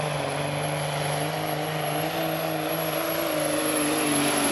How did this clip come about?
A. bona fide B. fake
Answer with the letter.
A